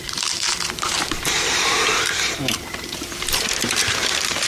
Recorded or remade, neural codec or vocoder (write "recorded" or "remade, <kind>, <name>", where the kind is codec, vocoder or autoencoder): remade, vocoder, BigVGAN v2